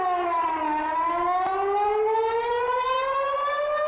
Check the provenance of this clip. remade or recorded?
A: recorded